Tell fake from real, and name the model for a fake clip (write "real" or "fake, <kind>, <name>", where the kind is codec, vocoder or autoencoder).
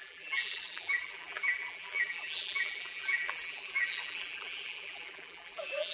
fake, vocoder, BigVGAN v2